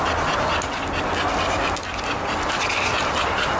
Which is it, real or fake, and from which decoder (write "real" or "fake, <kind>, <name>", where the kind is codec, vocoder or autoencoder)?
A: real